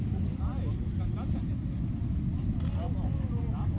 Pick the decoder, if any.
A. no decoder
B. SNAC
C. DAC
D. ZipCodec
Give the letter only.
A